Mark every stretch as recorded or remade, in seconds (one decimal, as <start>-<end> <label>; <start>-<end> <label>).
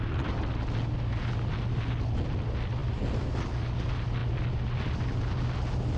0.0-6.0 recorded